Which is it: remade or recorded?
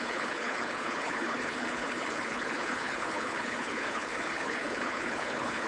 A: remade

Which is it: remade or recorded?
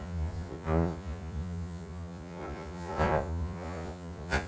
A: remade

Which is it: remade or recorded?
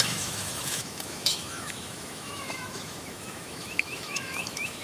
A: remade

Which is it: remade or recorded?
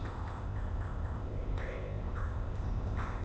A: remade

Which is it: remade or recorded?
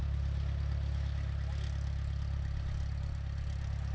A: recorded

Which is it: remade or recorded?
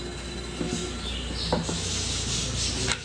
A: recorded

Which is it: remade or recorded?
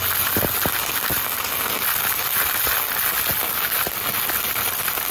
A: recorded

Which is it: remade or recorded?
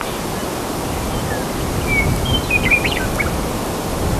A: recorded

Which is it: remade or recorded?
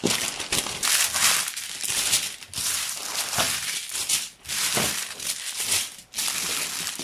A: recorded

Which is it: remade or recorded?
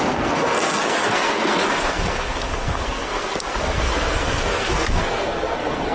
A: remade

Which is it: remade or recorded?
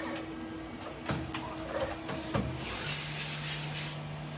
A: recorded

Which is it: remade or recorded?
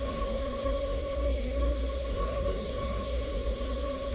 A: remade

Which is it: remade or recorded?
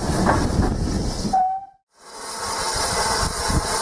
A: recorded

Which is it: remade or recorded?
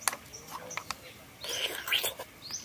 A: recorded